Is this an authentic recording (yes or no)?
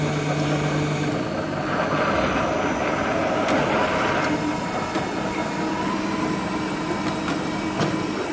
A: yes